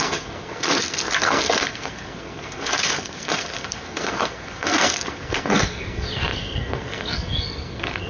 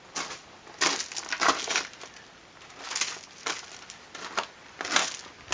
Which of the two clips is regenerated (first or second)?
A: first